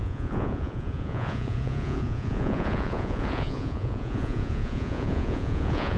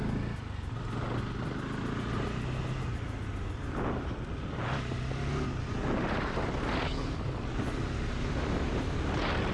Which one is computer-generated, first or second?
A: first